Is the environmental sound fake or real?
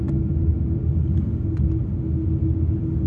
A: real